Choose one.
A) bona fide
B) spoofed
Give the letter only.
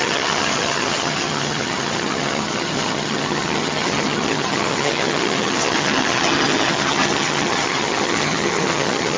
B